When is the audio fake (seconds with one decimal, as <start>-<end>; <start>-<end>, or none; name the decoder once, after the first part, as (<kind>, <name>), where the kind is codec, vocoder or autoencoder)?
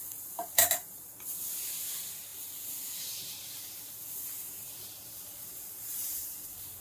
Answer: 0.4-1.0 (vocoder, BigVGAN v2); 2.3-6.8